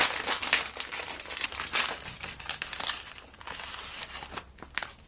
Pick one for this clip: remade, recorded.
recorded